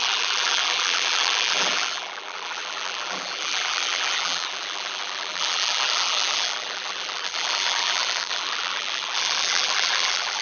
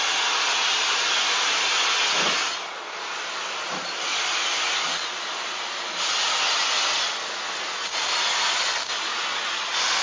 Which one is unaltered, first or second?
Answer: second